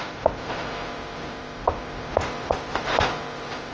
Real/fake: fake